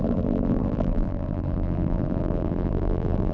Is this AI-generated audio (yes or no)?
yes